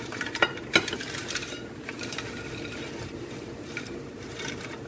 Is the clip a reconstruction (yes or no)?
yes